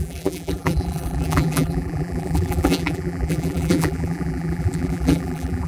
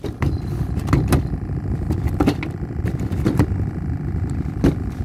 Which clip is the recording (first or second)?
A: second